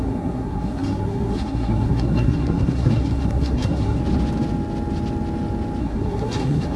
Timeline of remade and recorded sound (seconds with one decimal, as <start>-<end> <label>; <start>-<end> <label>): 0.0-4.0 remade; 4.0-5.8 recorded; 5.8-6.8 remade